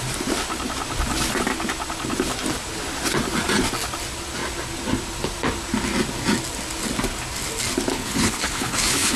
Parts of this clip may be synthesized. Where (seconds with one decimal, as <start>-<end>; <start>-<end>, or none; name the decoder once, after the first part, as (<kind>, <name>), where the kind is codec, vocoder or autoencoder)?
7.9-9.2 (codec, HILCodec)

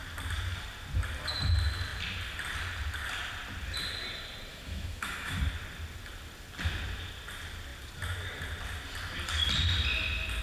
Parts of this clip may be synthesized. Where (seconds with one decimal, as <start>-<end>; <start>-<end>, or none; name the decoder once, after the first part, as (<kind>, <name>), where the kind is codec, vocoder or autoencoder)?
4.5-5.4 (autoencoder, DAC-VAE)

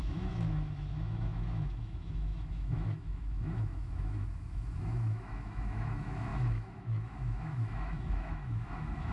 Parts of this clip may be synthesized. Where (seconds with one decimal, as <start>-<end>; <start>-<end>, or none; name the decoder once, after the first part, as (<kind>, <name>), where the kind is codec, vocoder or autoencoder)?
0.0-9.1 (autoencoder, DAC-VAE)

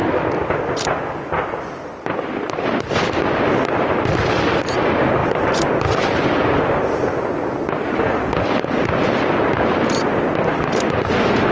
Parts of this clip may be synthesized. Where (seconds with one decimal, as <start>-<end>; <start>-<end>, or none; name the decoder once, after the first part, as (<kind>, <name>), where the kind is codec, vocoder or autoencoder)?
none

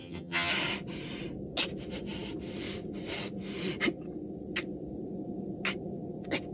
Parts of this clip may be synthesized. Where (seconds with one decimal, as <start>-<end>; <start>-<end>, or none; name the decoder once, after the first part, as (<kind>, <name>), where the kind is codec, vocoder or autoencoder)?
0.0-0.5 (vocoder, HiFi-GAN)